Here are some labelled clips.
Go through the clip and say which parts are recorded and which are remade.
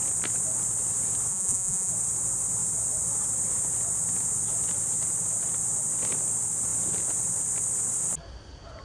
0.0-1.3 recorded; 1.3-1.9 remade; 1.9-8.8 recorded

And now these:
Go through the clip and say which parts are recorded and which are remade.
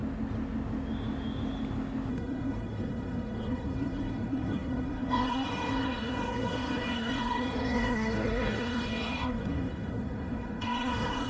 0.0-2.1 recorded; 2.1-11.3 remade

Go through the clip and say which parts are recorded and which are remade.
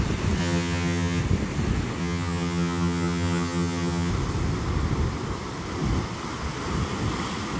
0.0-0.4 recorded; 0.4-1.2 remade; 1.2-2.0 recorded; 2.0-4.1 remade; 4.1-7.6 recorded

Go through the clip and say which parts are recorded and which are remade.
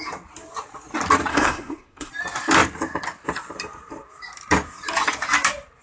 0.0-1.3 recorded; 1.3-2.1 remade; 2.1-5.8 recorded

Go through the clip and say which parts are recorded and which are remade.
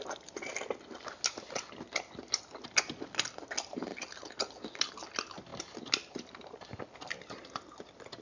0.0-8.2 recorded